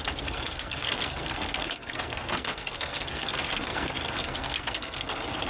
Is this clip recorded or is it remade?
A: remade